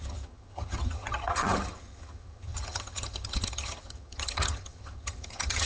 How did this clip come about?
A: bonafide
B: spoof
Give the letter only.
B